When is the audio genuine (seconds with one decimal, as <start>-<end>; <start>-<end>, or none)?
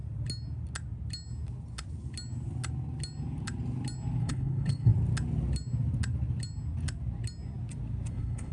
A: 0.0-4.2; 4.9-8.1